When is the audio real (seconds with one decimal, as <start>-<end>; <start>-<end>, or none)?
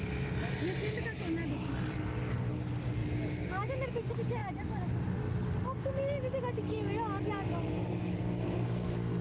0.0-7.8